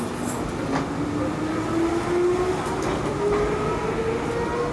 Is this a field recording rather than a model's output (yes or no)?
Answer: yes